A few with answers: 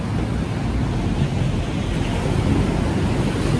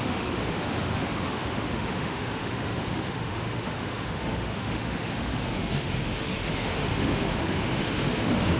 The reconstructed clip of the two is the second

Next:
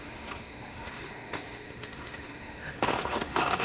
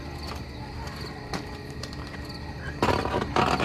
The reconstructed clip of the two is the first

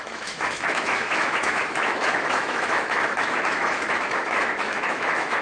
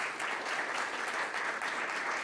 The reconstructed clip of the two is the first